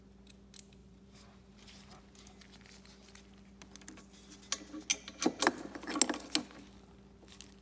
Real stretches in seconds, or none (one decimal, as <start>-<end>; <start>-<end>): 0.0-0.8; 2.0-7.6